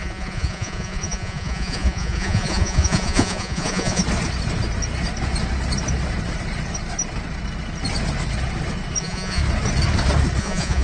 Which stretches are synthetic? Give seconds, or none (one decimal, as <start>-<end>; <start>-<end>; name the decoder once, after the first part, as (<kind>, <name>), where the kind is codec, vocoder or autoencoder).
0.0-4.0 (vocoder, Vocos); 9.0-9.4; 10.4-10.8